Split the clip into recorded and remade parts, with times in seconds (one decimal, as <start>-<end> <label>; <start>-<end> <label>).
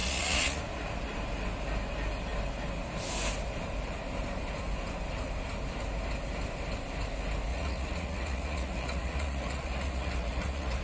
0.0-0.6 remade; 0.6-7.5 recorded; 7.5-10.8 remade